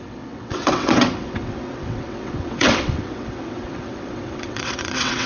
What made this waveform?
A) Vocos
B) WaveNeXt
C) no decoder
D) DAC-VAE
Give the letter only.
B